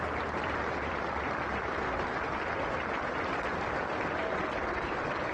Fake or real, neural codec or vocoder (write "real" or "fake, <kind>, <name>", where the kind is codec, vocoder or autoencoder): fake, vocoder, BigVGAN v2